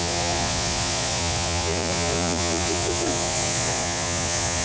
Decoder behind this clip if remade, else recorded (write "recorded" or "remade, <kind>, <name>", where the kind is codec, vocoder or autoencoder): remade, vocoder, Vocos